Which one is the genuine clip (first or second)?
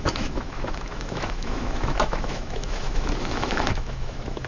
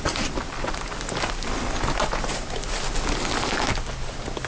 second